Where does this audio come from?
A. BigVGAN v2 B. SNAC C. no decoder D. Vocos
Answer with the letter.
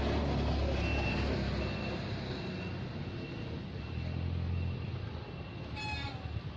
C